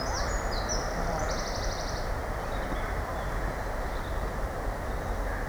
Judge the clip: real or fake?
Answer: real